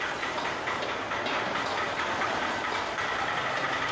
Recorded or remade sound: remade